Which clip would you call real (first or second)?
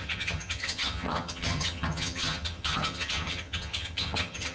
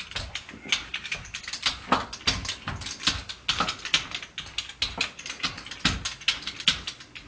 second